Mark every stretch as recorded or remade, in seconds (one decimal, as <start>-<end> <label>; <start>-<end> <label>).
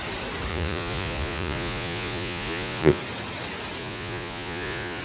0.0-0.5 recorded; 0.5-3.0 remade; 3.0-3.8 recorded; 3.8-5.0 remade